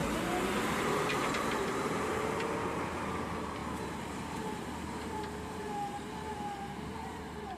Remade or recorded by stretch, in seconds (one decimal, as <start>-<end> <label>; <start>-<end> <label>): 0.0-7.6 remade